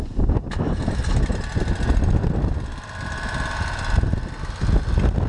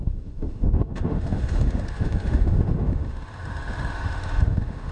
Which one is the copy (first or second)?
second